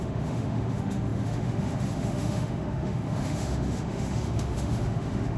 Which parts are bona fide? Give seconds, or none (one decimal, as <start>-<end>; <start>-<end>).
none